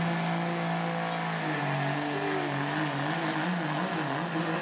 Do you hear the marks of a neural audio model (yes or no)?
no